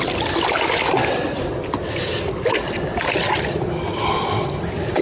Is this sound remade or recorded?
recorded